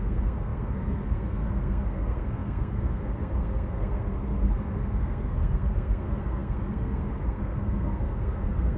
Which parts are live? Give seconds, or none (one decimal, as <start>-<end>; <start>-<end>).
none

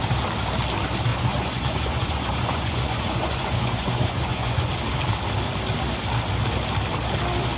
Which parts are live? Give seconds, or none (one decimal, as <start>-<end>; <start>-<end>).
0.0-1.1; 4.7-7.6

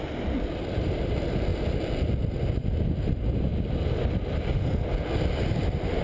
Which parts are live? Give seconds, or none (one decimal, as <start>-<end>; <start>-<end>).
0.0-6.0

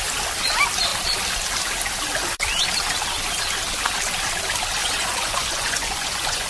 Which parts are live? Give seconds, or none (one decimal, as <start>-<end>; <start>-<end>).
0.0-4.8

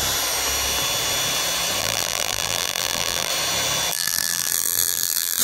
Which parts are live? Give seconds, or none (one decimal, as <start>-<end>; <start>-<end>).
0.0-1.8; 3.3-3.9

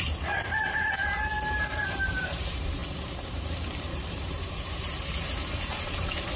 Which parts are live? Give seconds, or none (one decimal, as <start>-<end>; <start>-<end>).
none

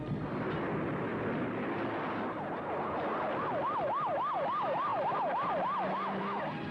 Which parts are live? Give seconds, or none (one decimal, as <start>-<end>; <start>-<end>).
0.0-6.7

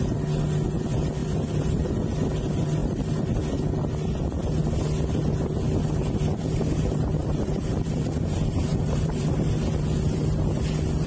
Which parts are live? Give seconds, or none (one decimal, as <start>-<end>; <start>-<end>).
0.0-1.2; 1.9-6.4; 8.0-8.7; 9.5-11.1